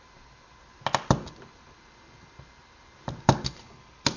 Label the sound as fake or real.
real